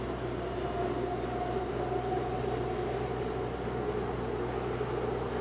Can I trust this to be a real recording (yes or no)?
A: yes